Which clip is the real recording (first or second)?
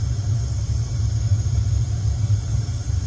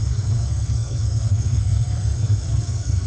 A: first